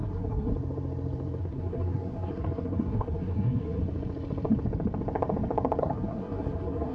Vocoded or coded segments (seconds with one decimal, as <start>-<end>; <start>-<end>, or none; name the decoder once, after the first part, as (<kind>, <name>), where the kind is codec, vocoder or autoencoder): 0.0-0.5 (codec, SNAC); 1.4-3.8; 5.8-6.9